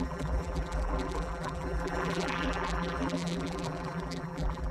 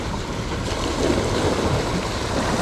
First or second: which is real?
second